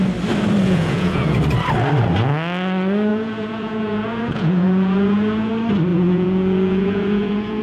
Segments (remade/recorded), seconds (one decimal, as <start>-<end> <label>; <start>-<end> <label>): 0.0-0.6 recorded; 0.6-1.4 remade; 1.4-3.1 recorded; 3.1-5.5 remade; 5.5-5.9 recorded; 5.9-7.6 remade